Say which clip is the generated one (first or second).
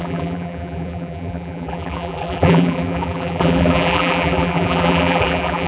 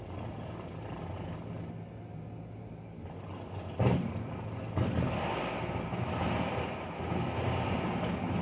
first